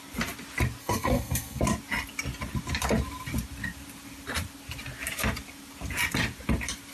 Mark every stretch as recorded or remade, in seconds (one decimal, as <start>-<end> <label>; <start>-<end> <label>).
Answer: 0.0-0.8 recorded; 0.8-1.6 remade; 1.6-6.9 recorded